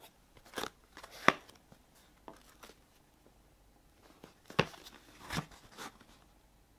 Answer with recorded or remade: recorded